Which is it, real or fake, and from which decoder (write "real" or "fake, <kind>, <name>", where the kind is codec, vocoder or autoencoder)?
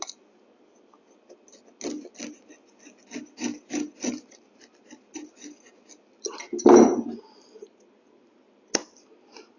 real